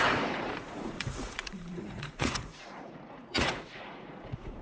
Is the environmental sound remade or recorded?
remade